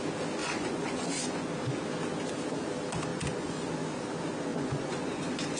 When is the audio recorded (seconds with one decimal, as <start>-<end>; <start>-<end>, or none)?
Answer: 0.0-0.4; 1.5-3.1; 3.7-4.5